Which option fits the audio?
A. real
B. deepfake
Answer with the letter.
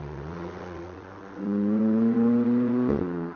B